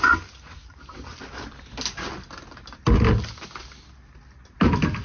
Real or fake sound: real